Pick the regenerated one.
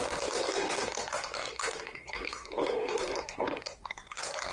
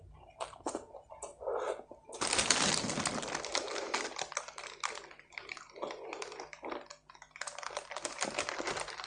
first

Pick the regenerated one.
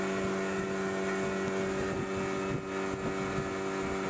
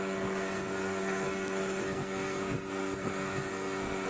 second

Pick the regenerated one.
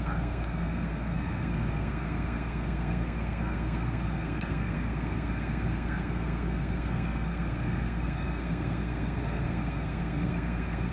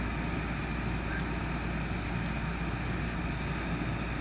first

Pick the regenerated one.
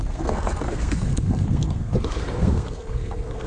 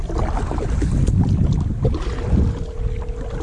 first